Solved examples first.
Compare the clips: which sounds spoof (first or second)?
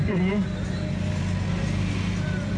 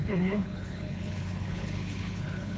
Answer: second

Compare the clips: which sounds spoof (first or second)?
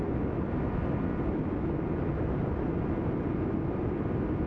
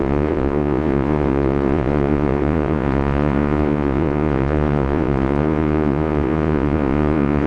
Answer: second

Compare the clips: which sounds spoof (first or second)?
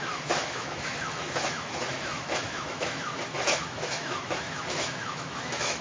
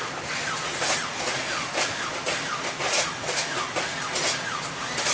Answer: first